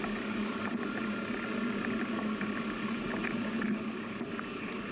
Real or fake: real